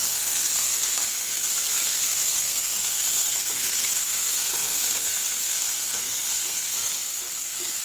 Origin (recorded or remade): remade